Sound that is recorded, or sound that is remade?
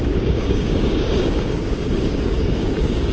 remade